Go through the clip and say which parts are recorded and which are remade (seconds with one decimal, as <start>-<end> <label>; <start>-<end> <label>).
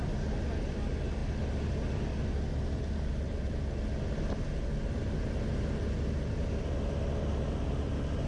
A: 0.0-8.3 recorded